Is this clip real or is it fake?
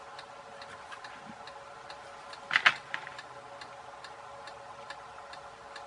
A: real